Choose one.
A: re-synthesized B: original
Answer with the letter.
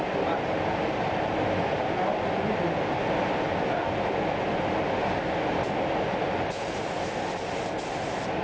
B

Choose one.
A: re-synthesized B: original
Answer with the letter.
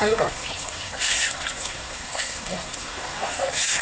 A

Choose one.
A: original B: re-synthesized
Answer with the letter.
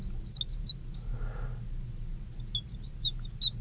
A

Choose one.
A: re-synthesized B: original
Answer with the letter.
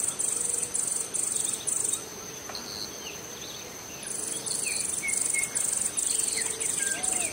B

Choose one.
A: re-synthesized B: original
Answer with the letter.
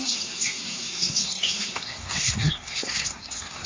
A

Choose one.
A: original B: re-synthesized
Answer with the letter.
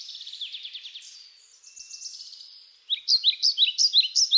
A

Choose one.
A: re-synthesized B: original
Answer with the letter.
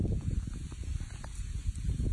B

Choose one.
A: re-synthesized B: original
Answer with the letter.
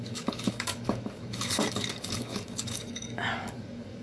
A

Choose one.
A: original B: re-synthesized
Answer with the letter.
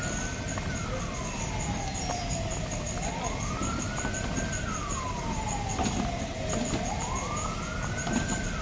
A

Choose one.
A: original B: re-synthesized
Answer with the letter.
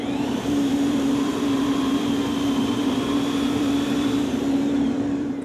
B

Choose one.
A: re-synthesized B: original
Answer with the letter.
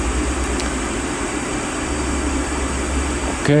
B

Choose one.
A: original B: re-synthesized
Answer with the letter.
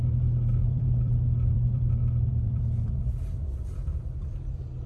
B